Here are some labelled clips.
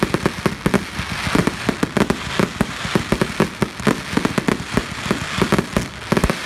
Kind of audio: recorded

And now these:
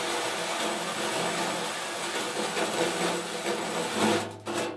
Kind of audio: recorded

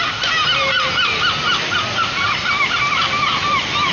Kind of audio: recorded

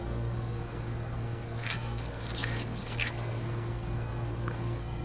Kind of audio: remade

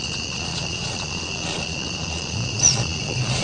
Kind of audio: remade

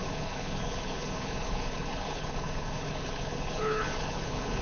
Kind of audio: remade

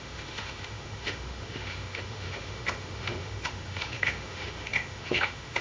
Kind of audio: remade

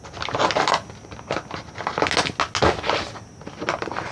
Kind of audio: recorded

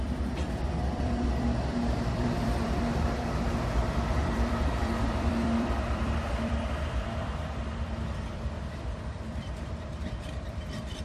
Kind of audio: remade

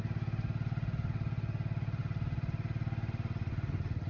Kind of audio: recorded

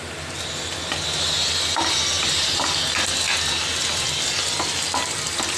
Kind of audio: recorded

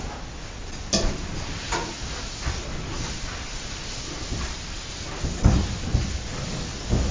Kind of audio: recorded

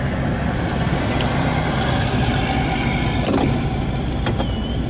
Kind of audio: recorded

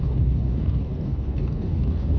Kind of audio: remade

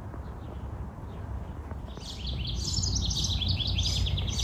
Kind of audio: recorded